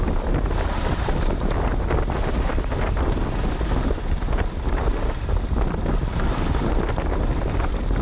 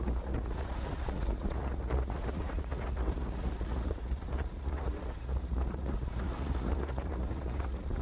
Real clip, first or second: first